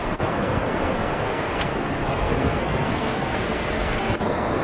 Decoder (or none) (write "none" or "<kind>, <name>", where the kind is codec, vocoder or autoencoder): codec, SNAC